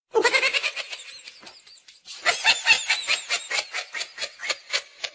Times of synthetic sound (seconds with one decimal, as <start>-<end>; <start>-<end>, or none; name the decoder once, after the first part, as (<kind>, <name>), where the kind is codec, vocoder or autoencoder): none